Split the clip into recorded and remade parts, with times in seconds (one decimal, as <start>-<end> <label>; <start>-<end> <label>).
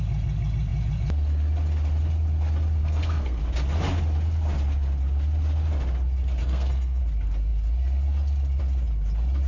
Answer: 0.0-2.8 recorded; 2.8-3.4 remade; 3.4-6.4 recorded; 6.4-7.0 remade; 7.0-9.5 recorded